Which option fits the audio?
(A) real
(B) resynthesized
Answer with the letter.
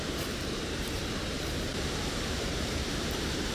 B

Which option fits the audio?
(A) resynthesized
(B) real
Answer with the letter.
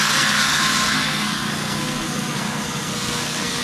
A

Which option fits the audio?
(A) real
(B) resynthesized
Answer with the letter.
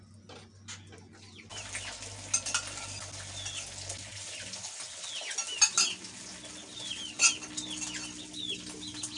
A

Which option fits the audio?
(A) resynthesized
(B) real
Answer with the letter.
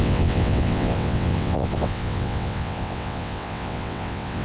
A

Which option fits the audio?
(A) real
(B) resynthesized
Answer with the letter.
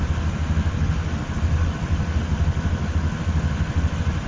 A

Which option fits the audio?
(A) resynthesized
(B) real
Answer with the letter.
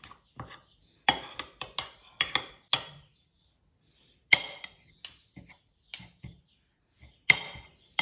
B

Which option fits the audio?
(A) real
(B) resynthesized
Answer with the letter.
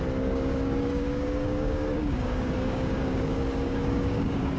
B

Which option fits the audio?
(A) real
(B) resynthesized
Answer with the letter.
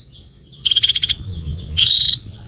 B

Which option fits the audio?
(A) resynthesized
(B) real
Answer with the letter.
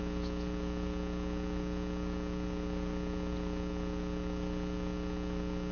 B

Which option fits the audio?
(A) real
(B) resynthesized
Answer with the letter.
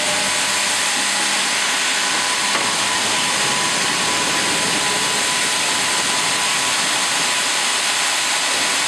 A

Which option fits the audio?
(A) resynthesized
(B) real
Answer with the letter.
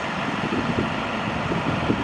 B